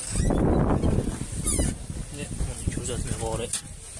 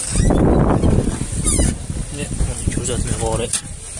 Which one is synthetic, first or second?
second